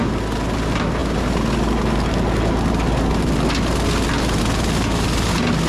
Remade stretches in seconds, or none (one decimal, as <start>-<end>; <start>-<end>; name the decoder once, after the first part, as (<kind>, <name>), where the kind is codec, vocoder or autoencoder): none